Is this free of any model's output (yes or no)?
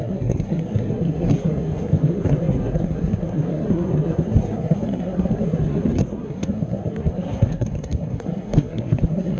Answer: no